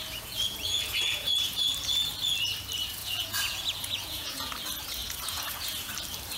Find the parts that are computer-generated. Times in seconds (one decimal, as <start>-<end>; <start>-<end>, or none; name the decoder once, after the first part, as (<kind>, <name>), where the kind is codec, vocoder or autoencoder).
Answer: 0.0-1.7 (vocoder, Vocos); 3.0-4.5; 5.0-5.9